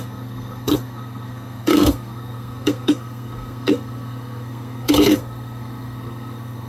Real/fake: fake